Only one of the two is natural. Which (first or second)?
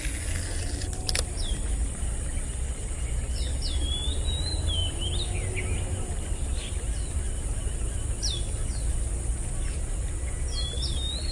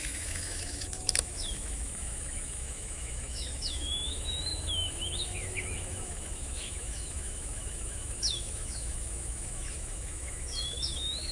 first